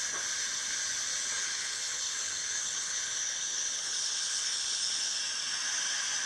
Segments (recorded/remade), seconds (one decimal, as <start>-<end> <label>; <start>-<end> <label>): 0.0-1.4 recorded; 1.4-5.2 remade; 5.2-6.3 recorded